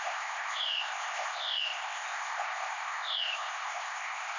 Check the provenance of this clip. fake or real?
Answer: fake